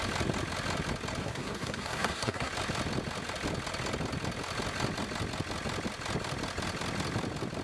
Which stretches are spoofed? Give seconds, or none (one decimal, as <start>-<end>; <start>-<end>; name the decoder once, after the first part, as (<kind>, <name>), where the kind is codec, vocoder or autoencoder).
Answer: 1.2-2.5 (codec, SNAC)